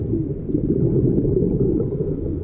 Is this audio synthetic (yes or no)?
yes